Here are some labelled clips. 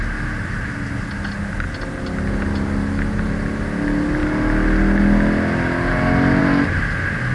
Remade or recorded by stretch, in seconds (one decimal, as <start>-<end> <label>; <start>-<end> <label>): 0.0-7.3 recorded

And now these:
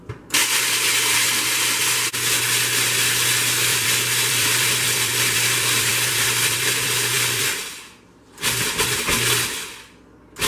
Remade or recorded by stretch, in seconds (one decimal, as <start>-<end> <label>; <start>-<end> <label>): 0.0-3.7 recorded; 3.7-8.9 remade; 8.9-10.5 recorded

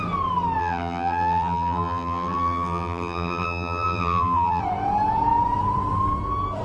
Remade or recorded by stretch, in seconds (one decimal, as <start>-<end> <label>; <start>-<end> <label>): 0.0-0.6 recorded; 0.6-4.6 remade; 4.6-6.6 recorded

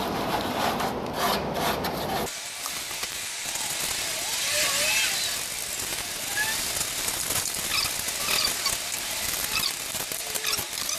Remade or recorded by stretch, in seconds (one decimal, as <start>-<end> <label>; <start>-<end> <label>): 0.0-11.0 recorded